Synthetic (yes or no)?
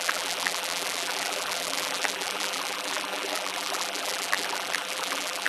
yes